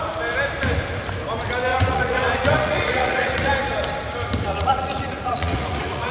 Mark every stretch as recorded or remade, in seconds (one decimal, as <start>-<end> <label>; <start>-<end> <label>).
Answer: 0.0-1.7 recorded; 1.7-3.5 remade; 3.5-4.5 recorded; 4.5-6.1 remade